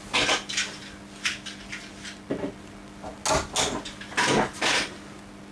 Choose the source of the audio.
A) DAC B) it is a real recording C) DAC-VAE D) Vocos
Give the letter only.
B